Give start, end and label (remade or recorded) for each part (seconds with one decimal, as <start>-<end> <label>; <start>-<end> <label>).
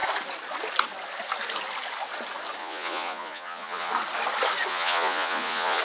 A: 0.0-2.6 recorded; 2.6-3.9 remade; 3.9-4.7 recorded; 4.7-5.8 remade